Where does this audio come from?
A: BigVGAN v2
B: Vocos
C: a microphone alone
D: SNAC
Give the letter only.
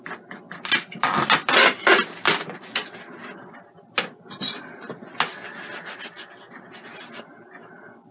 C